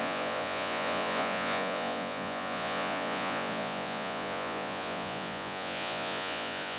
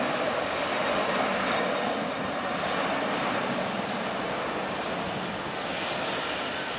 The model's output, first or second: first